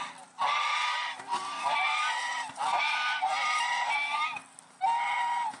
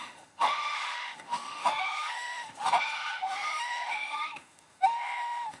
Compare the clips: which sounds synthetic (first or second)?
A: second